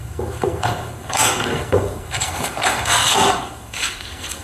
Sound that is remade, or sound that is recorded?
remade